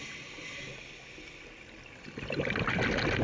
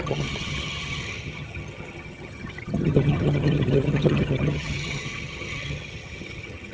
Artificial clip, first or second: second